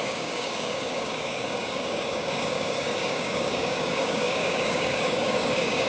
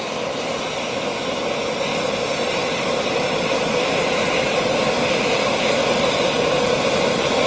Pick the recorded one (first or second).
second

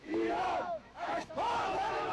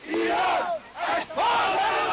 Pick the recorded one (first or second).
second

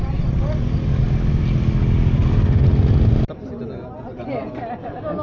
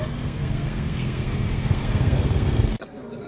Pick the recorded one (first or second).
first